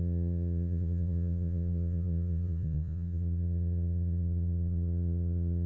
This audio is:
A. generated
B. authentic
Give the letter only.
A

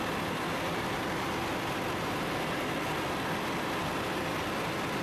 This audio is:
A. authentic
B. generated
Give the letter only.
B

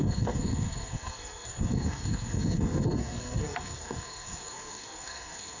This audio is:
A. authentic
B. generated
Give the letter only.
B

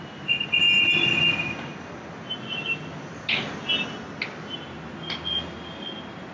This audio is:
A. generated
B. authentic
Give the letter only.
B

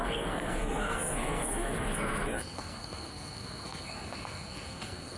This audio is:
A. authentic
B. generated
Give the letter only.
B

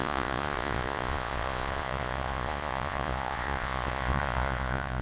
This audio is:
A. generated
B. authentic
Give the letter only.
A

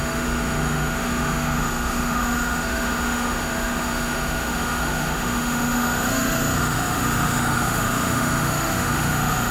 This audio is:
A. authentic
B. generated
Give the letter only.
B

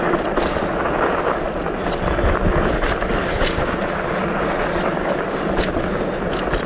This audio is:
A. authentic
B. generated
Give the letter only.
A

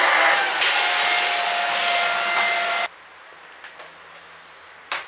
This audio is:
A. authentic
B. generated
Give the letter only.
A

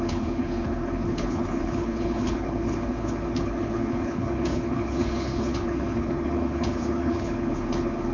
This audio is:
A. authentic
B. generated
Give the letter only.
B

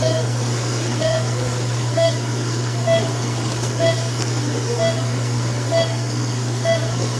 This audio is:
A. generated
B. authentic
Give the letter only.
A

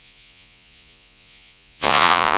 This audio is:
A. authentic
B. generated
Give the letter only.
B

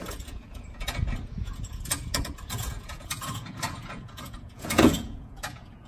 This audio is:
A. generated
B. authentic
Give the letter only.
A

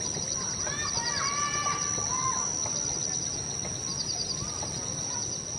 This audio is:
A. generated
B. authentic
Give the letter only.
B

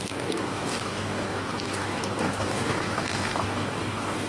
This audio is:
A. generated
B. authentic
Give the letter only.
A